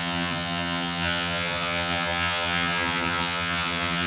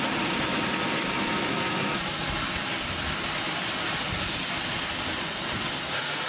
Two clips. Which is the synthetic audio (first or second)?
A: first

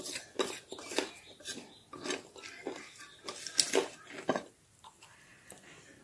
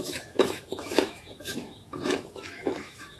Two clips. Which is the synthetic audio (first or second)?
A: second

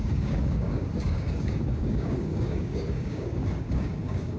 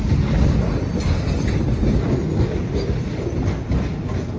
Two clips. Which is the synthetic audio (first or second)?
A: first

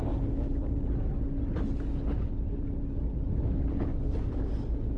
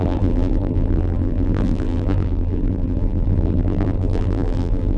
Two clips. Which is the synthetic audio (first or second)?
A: second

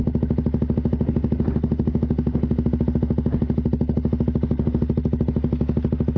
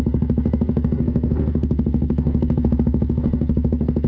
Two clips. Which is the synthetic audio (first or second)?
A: second